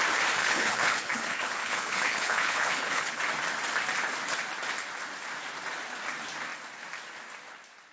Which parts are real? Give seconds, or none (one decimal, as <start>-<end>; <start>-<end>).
0.0-0.4; 3.2-7.9